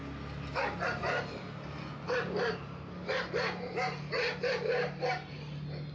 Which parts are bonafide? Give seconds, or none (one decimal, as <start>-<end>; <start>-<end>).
0.0-5.9